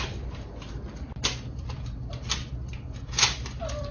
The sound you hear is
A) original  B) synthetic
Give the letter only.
A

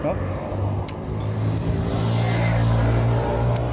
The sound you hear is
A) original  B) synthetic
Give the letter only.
A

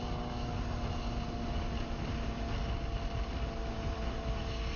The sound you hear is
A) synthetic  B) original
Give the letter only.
B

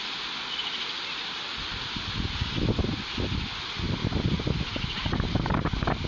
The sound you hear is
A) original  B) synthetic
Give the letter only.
A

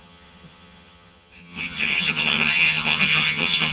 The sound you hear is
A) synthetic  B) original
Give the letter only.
A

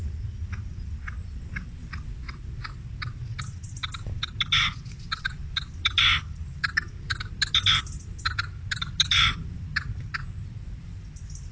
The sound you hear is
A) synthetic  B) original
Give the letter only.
B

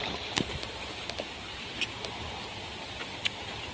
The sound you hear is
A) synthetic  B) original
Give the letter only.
B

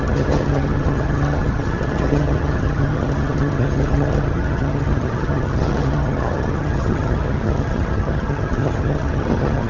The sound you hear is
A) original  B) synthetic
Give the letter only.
B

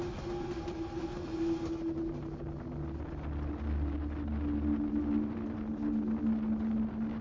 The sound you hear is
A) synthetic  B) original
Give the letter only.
B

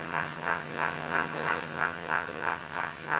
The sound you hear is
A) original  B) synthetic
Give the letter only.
B